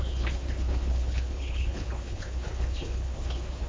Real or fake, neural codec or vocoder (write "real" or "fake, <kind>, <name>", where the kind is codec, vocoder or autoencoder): fake, codec, HILCodec